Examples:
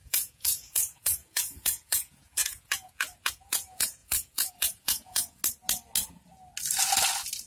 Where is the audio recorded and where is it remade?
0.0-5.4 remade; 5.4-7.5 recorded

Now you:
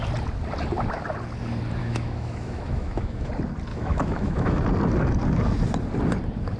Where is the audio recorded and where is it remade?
0.0-1.8 recorded; 1.8-3.3 remade; 3.3-3.7 recorded; 3.7-4.6 remade; 4.6-6.6 recorded

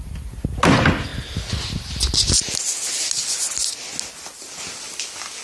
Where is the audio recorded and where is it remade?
0.0-5.4 recorded

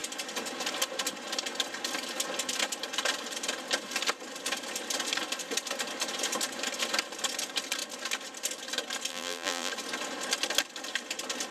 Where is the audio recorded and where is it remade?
0.0-9.1 recorded; 9.1-9.7 remade; 9.7-11.5 recorded

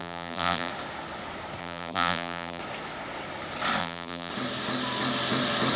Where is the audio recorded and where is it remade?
0.0-0.7 remade; 0.7-1.6 recorded; 1.6-2.6 remade; 2.6-3.8 recorded; 3.8-4.3 remade; 4.3-5.8 recorded

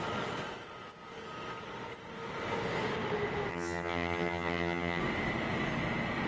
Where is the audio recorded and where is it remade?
0.0-3.5 recorded; 3.5-5.0 remade; 5.0-6.3 recorded

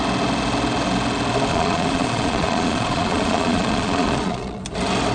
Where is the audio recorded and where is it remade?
0.0-1.5 recorded; 1.5-4.6 remade; 4.6-5.1 recorded

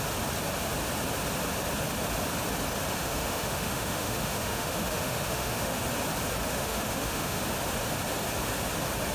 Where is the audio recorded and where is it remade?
0.0-3.0 recorded; 3.0-5.8 remade; 5.8-6.5 recorded; 6.5-7.4 remade; 7.4-9.1 recorded